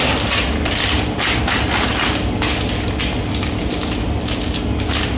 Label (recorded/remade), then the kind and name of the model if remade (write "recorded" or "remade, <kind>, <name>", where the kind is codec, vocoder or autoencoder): recorded